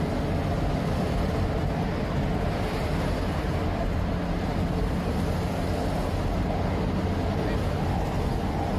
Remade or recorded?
recorded